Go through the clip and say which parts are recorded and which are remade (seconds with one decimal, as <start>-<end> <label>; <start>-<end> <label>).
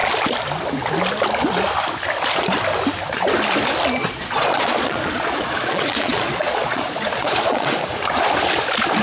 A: 0.0-4.0 recorded; 4.0-7.7 remade; 7.7-9.0 recorded